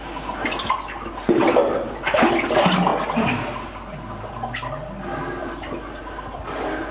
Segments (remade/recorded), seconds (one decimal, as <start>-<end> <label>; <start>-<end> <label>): 0.0-6.9 recorded